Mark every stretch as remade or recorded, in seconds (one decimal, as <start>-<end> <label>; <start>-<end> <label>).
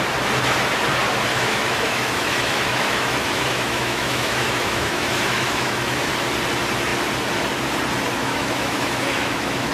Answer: 0.0-1.3 recorded; 1.3-6.1 remade; 6.1-8.2 recorded; 8.2-9.7 remade